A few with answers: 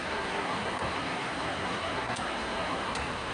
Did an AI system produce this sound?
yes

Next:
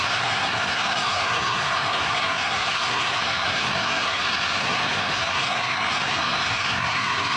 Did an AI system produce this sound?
yes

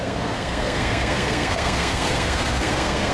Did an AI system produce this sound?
yes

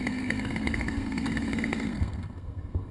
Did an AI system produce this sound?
yes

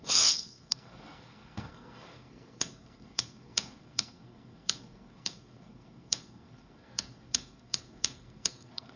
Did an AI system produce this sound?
yes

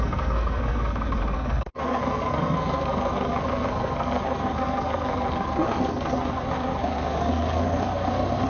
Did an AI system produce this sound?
yes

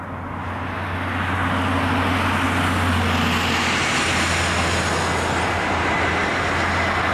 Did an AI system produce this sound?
no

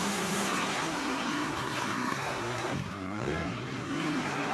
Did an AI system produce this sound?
yes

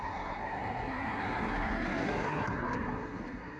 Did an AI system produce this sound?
yes